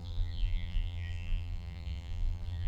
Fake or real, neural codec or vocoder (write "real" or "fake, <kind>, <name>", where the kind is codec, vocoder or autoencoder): fake, vocoder, BigVGAN v2